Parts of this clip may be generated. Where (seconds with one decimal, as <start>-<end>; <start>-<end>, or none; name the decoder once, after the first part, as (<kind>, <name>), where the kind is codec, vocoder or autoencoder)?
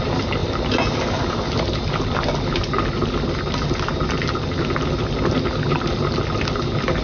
none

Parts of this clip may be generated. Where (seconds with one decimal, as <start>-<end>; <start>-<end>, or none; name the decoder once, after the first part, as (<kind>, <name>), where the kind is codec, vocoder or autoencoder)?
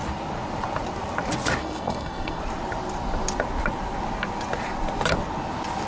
1.6-2.4 (codec, SNAC)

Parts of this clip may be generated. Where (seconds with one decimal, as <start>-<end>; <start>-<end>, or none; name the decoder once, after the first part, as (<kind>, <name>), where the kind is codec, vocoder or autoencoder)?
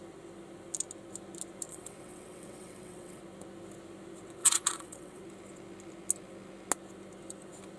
1.7-3.2 (vocoder, WaveNeXt); 4.4-5.2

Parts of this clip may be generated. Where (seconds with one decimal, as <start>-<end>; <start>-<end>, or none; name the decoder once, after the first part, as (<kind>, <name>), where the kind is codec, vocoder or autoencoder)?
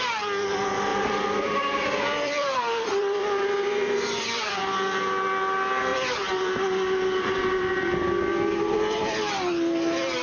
0.9-4.6 (vocoder, BigVGAN v2)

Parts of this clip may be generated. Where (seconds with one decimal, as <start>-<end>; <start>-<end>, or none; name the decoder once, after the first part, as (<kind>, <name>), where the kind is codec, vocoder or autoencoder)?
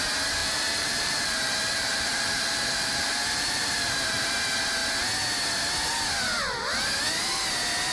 0.4-4.3 (vocoder, BigVGAN v2)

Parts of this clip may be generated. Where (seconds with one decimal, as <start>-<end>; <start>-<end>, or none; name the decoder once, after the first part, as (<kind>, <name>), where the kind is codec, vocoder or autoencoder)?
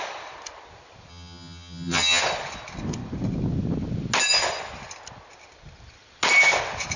1.1-2.2 (vocoder, HiFi-GAN)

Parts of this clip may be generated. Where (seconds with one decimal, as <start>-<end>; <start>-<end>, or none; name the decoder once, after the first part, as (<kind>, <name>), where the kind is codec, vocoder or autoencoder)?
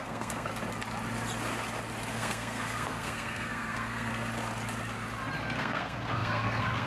0.0-0.5 (codec, SNAC); 2.1-4.1; 5.6-6.9